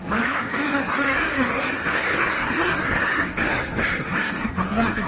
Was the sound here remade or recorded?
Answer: remade